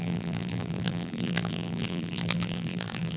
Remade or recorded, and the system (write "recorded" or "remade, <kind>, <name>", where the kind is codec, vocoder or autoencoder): remade, vocoder, BigVGAN v2